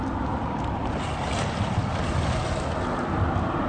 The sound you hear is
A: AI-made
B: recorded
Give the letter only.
B